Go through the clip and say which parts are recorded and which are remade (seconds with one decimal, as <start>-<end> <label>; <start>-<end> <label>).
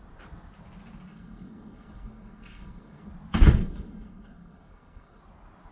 0.0-1.1 recorded; 1.1-3.1 remade; 3.1-3.6 recorded; 3.6-5.2 remade; 5.2-5.7 recorded